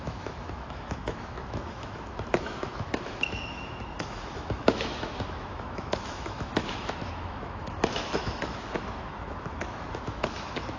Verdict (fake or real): fake